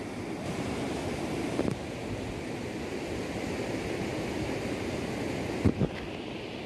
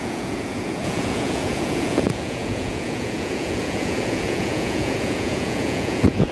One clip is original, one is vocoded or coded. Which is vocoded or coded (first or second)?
second